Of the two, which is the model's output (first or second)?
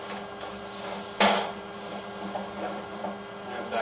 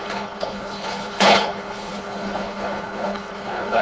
second